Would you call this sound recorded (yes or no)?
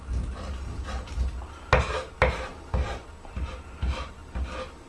yes